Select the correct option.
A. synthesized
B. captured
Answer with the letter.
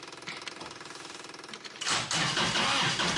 B